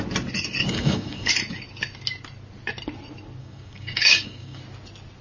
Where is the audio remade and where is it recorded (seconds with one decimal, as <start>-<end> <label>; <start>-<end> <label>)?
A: 0.0-0.6 recorded; 0.6-1.3 remade; 1.3-3.4 recorded; 3.4-4.6 remade; 4.6-5.2 recorded